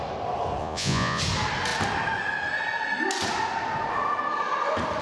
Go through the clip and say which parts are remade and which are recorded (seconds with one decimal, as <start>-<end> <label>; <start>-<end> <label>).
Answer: 0.0-0.6 recorded; 0.6-1.2 remade; 1.2-5.0 recorded